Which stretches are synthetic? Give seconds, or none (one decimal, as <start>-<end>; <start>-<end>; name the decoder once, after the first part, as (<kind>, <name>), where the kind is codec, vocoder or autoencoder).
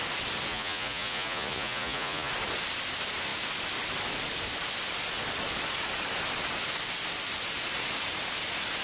0.5-2.3 (vocoder, Vocos)